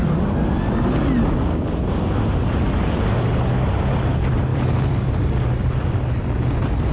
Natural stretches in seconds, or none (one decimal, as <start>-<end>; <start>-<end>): 0.0-4.5; 5.3-6.9